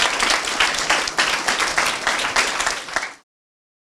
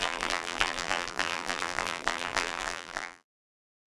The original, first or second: first